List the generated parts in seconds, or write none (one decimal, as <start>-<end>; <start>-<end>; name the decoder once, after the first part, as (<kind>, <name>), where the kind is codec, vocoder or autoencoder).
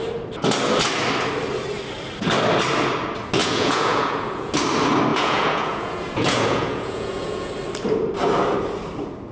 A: 3.4-4.5 (vocoder, Vocos); 5.1-7.5